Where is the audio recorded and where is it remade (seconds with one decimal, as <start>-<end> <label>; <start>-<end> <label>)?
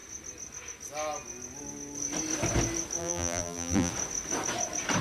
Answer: 0.0-3.0 recorded; 3.0-3.9 remade; 3.9-5.0 recorded